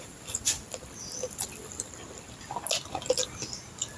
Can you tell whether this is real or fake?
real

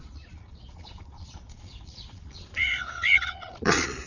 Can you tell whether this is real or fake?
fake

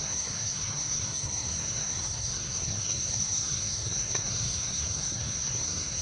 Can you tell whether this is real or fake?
fake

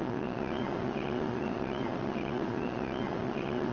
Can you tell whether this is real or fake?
fake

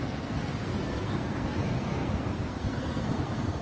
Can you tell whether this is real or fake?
fake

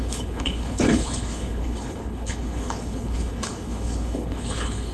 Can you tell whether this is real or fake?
fake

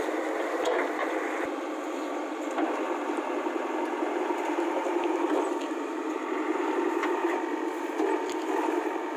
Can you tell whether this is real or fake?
real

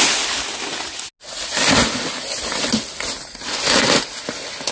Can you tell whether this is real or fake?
real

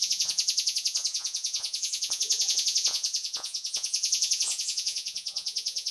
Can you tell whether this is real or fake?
fake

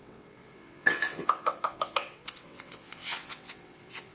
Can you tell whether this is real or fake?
fake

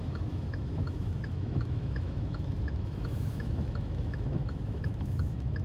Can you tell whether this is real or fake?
fake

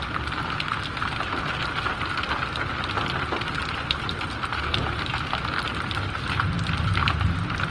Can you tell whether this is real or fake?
real